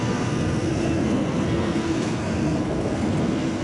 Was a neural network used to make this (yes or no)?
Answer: yes